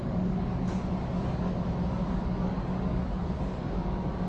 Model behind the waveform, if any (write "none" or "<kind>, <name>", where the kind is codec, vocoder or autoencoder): codec, DAC